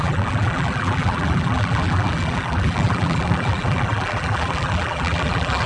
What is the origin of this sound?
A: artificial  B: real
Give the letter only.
A